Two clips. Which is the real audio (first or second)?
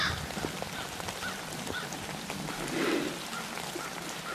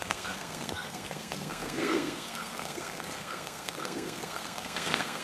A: first